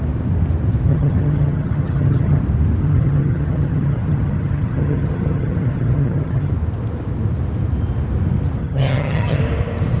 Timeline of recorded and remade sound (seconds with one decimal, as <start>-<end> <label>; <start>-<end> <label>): 0.0-0.9 recorded; 0.9-2.4 remade; 2.4-2.8 recorded; 2.8-6.5 remade; 6.5-8.6 recorded; 8.6-9.4 remade; 9.4-10.0 recorded